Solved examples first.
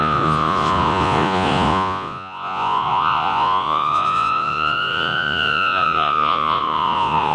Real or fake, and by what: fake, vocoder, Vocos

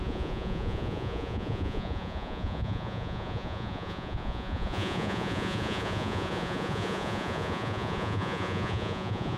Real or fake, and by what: fake, vocoder, Vocos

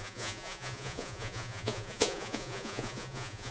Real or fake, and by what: fake, vocoder, Vocos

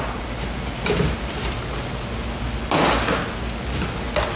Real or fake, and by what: real